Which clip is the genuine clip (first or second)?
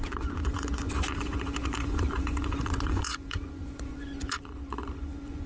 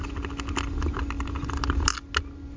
second